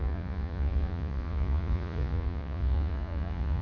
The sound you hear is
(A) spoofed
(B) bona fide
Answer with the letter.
A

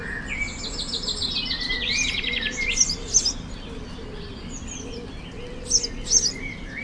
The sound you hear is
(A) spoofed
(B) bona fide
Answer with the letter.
B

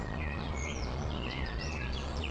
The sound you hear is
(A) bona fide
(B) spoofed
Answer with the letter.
B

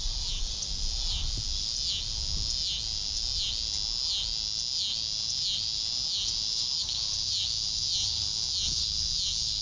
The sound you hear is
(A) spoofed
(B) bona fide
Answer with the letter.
B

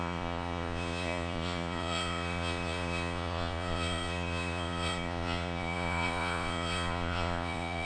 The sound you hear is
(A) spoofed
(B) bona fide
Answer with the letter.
A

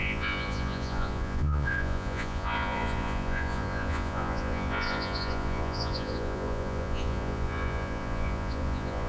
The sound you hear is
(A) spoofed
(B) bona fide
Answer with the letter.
A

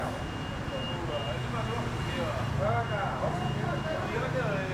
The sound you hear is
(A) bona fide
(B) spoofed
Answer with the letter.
A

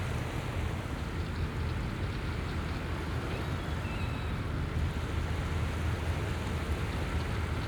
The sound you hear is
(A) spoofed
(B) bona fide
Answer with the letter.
B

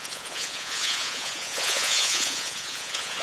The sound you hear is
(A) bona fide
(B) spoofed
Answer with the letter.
B